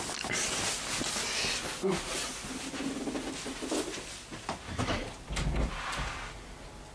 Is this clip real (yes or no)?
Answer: yes